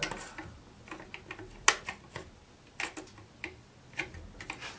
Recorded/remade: recorded